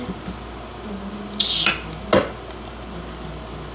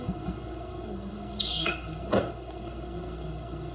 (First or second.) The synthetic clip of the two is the second